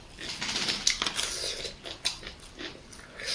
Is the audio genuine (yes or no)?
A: yes